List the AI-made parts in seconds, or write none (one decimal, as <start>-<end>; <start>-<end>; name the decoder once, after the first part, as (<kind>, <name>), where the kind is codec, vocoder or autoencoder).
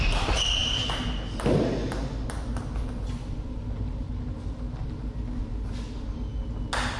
none